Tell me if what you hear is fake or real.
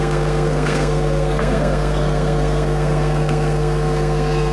fake